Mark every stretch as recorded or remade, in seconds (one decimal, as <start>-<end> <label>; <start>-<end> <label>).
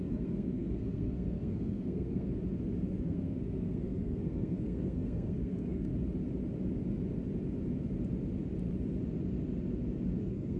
0.0-2.3 remade; 2.3-3.0 recorded; 3.0-5.9 remade; 5.9-10.2 recorded; 10.2-10.6 remade